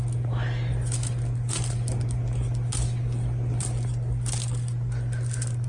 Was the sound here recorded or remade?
recorded